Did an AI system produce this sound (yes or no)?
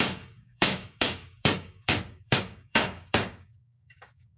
yes